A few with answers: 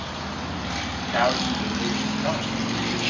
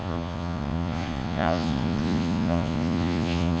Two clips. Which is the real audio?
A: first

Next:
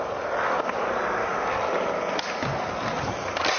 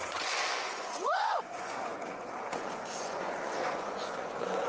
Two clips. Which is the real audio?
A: first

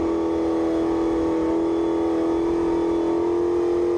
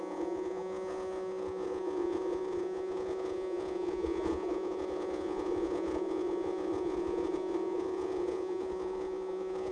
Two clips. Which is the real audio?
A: first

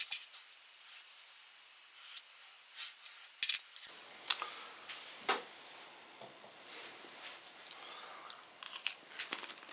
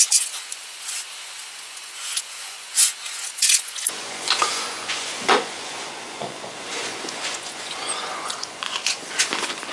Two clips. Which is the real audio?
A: first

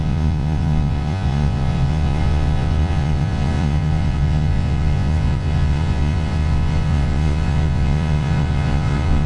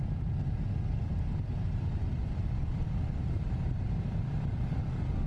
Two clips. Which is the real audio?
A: second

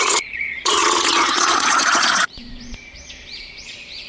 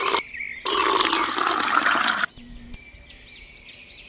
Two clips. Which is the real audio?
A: second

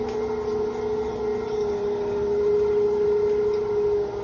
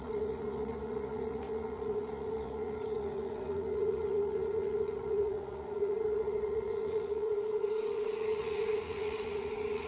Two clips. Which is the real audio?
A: first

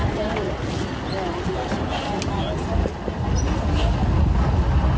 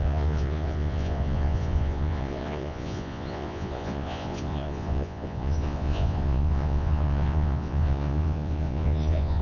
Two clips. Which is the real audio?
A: first